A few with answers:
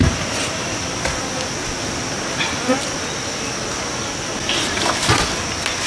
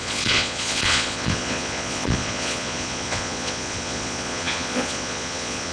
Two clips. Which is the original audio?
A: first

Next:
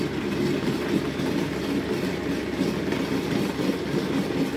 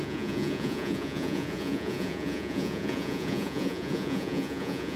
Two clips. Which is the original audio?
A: first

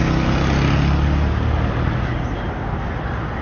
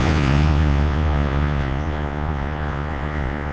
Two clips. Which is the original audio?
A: first